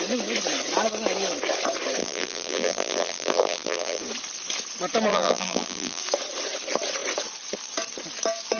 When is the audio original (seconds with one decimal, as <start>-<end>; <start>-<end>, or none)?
0.0-2.0; 4.0-5.1; 6.0-8.6